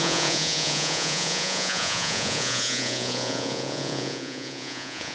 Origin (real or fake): fake